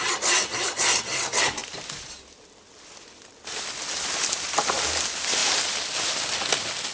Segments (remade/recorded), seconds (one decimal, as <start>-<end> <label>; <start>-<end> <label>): 0.0-6.9 recorded